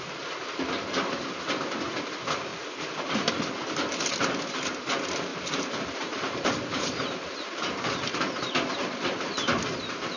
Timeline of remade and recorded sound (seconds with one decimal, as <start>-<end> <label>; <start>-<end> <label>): 0.0-2.5 recorded; 2.5-3.4 remade; 3.4-5.3 recorded; 5.3-7.9 remade; 7.9-10.2 recorded